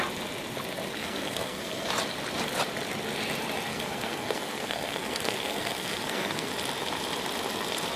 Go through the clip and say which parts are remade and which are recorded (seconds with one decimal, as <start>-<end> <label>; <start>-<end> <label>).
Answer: 0.0-1.0 recorded; 1.0-1.9 remade; 1.9-3.7 recorded; 3.7-6.5 remade; 6.5-8.0 recorded